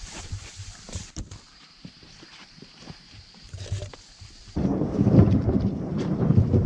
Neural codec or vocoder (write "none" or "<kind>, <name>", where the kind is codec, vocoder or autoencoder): vocoder, BigVGAN v2